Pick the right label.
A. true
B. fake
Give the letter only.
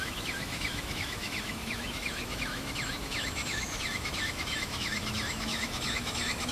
B